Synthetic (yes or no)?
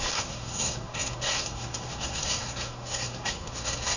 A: yes